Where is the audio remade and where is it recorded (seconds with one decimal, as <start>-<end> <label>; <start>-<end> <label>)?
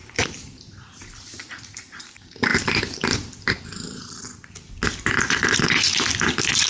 0.0-6.7 recorded